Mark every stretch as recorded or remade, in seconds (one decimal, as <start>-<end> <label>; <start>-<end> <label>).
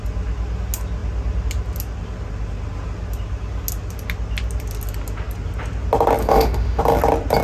0.0-6.2 recorded; 6.2-6.8 remade; 6.8-7.4 recorded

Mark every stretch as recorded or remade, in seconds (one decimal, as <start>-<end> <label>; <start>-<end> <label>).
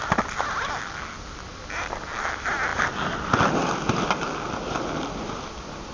0.0-5.9 recorded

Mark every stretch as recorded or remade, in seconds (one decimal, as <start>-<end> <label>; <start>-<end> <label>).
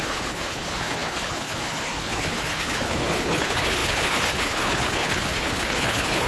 0.0-6.3 remade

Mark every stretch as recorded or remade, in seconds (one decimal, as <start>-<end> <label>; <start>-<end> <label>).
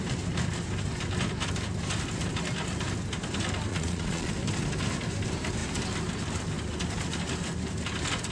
0.0-3.7 recorded; 3.7-4.3 remade; 4.3-8.3 recorded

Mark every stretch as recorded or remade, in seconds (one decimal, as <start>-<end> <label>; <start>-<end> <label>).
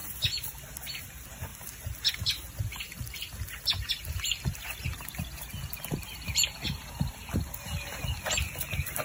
0.0-1.5 remade; 1.5-2.1 recorded; 2.1-2.7 remade; 2.7-3.9 recorded; 3.9-4.9 remade; 4.9-5.9 recorded; 5.9-9.0 remade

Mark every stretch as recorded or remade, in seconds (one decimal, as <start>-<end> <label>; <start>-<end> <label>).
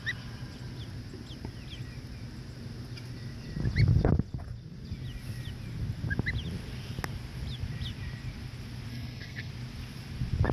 0.0-8.9 recorded; 8.9-9.5 remade; 9.5-10.5 recorded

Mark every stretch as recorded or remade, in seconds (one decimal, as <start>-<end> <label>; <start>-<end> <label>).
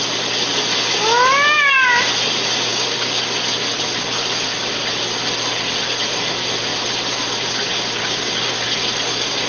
0.0-2.7 recorded; 2.7-3.2 remade; 3.2-8.0 recorded; 8.0-8.5 remade; 8.5-9.5 recorded